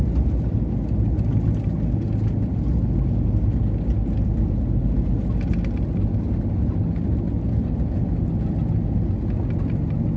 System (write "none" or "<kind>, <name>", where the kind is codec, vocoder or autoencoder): none